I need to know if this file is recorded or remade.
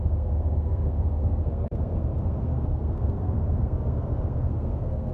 remade